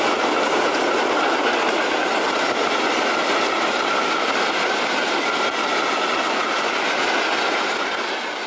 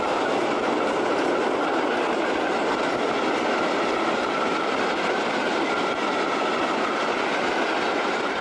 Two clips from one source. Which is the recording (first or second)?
first